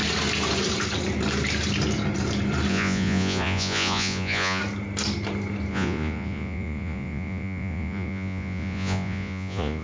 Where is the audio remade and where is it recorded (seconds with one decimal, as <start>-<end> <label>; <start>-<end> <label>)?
0.0-2.7 recorded; 2.7-4.6 remade; 4.6-5.7 recorded; 5.7-9.8 remade